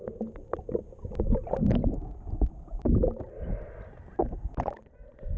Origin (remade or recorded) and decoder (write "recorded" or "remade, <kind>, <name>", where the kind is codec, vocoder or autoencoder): recorded